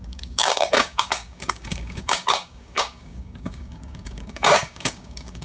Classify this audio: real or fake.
fake